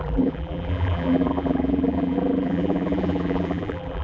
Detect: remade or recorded remade